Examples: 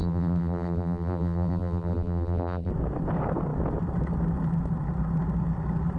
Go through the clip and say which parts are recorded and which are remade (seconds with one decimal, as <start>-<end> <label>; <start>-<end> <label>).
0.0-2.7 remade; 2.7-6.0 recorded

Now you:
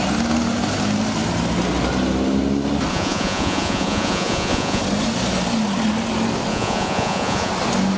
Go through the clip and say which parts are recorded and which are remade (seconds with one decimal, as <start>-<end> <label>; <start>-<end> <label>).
0.0-2.9 recorded; 2.9-4.8 remade; 4.8-6.5 recorded; 6.5-7.5 remade; 7.5-8.0 recorded

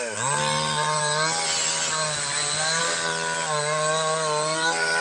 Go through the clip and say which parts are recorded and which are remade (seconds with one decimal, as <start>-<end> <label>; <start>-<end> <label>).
0.0-5.0 recorded

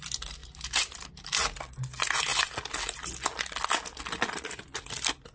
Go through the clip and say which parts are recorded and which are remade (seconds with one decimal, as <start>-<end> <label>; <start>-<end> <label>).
0.0-0.4 recorded; 0.4-1.6 remade; 1.6-5.3 recorded

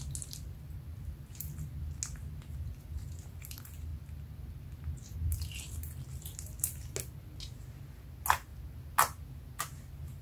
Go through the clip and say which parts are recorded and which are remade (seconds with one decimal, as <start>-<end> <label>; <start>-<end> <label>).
0.0-10.2 recorded

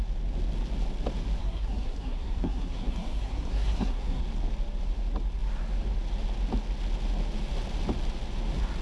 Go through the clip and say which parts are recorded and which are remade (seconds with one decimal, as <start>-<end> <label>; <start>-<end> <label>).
0.0-1.4 recorded; 1.4-4.2 remade; 4.2-8.8 recorded

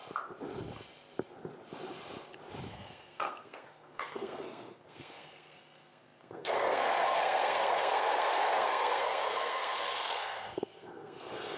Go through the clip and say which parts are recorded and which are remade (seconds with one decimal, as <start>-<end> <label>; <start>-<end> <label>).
0.0-2.7 recorded; 2.7-11.6 remade

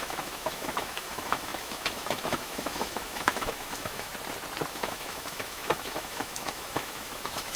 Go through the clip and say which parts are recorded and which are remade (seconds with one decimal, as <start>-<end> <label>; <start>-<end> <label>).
0.0-4.1 remade; 4.1-4.7 recorded; 4.7-7.6 remade